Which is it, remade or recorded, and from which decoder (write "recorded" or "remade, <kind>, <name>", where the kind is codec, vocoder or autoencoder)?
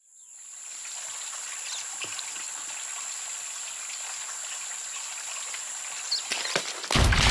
recorded